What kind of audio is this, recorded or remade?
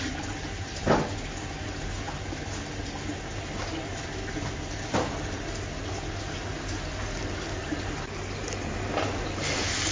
recorded